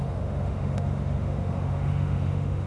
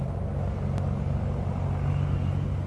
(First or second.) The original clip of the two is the second